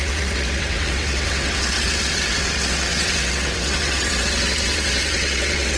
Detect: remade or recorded remade